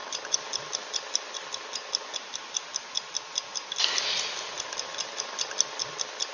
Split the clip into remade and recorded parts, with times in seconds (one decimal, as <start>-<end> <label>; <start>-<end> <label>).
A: 0.0-6.3 recorded